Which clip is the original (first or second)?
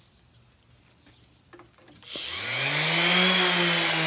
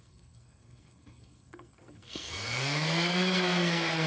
first